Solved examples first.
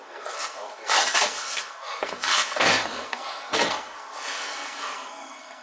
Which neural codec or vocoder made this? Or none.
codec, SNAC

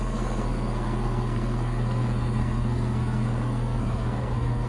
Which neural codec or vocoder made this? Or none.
codec, SNAC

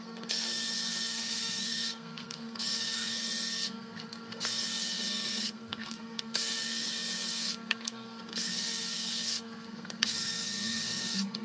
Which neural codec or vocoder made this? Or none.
codec, SNAC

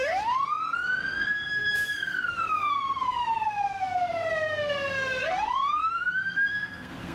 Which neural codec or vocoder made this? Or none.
codec, SNAC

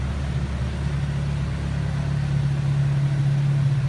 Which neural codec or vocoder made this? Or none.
none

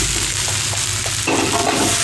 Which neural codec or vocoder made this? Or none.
none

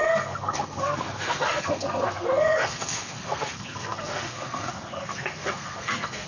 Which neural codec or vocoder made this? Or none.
codec, SNAC